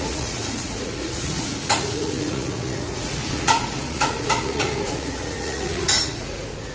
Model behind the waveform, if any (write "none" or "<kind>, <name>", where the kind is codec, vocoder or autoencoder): vocoder, Vocos